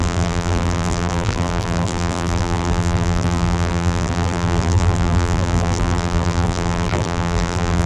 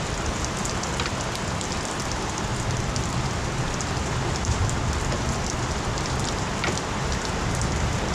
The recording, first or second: second